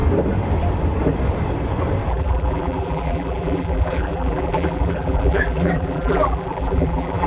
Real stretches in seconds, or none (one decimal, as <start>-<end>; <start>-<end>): 0.0-2.1